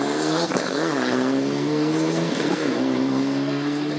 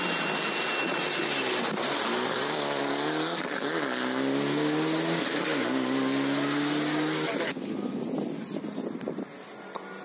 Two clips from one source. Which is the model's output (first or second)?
first